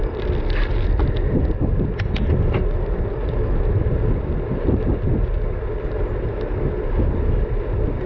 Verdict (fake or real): fake